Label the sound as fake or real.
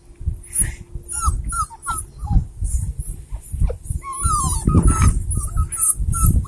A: real